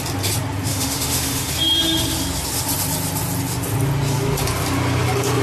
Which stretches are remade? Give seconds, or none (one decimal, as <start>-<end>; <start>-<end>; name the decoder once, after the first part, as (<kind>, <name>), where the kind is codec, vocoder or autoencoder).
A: 0.7-1.5 (autoencoder, DAC-VAE)

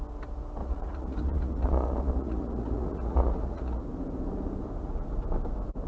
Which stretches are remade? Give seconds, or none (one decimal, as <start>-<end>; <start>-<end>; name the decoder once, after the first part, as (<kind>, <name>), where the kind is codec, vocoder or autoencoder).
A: 0.6-3.8 (vocoder, Vocos)

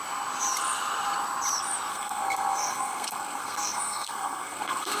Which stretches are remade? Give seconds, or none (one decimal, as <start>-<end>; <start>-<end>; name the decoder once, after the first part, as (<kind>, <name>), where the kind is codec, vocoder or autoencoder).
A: 1.9-5.0 (codec, SNAC)

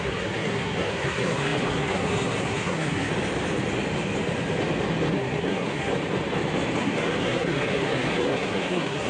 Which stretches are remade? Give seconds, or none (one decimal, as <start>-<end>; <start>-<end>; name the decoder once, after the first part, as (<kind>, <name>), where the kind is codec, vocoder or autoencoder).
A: 0.0-3.1 (codec, SNAC); 5.1-5.9; 6.8-9.1

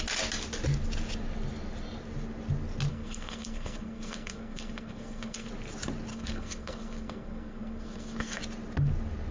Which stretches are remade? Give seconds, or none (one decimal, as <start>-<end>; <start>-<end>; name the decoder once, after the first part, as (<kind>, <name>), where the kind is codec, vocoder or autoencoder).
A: 2.9-5.5 (codec, SNAC); 6.1-8.4

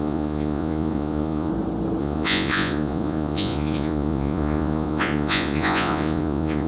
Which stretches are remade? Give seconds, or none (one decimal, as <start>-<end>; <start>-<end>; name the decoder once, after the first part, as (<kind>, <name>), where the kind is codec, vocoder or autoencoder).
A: 0.0-1.5 (vocoder, Vocos); 2.0-6.7

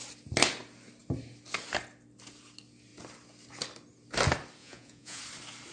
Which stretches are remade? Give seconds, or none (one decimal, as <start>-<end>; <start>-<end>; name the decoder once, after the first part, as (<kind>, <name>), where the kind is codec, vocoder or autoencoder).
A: 4.6-5.2 (vocoder, Vocos)